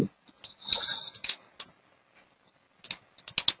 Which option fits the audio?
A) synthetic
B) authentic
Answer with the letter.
B